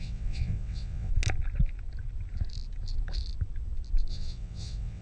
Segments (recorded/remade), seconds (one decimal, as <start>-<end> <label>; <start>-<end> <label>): 0.0-1.1 remade; 1.1-4.1 recorded; 4.1-5.0 remade